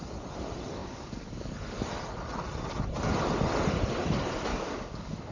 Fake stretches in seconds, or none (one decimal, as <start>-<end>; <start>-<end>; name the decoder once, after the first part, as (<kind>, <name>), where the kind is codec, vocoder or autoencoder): 0.8-1.5 (codec, DAC); 4.5-5.3